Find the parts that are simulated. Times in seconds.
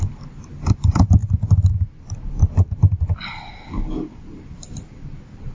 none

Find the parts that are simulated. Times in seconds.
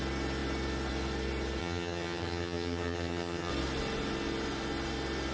1.6-3.5 (vocoder, HiFi-GAN)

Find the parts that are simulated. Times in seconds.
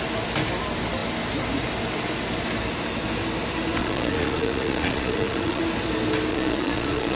3.8-5.6 (vocoder, Vocos); 6.3-7.2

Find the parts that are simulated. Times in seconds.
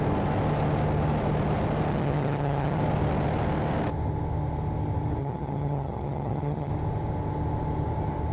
1.9-2.8 (vocoder, HiFi-GAN); 5.2-6.7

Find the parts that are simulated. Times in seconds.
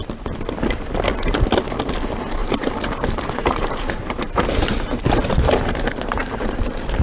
2.4-6.6 (vocoder, BigVGAN v2)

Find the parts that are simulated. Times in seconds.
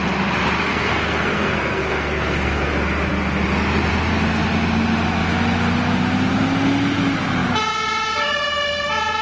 0.7-2.7 (codec, SNAC)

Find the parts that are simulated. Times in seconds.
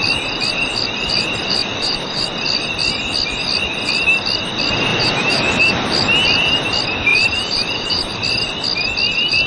1.6-2.2 (vocoder, BigVGAN v2); 4.9-5.4; 7.1-8.1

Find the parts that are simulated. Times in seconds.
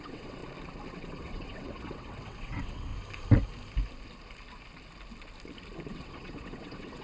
0.0-0.4 (vocoder, WaveNeXt); 0.9-2.9; 5.9-7.0